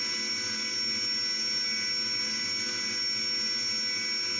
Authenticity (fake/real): real